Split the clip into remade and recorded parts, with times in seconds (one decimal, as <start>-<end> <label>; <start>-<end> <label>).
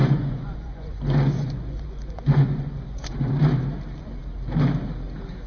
0.0-3.3 remade; 3.3-5.5 recorded